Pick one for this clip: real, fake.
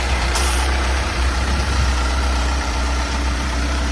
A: fake